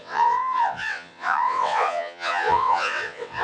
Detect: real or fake fake